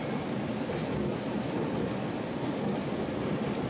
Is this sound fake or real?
real